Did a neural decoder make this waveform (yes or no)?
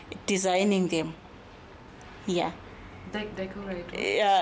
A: no